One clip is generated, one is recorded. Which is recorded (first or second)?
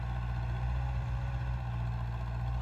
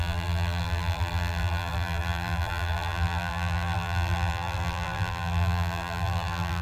first